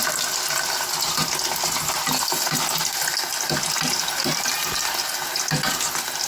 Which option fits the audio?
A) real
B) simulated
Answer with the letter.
A